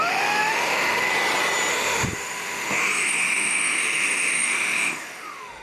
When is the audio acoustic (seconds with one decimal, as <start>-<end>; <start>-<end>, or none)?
1.1-1.7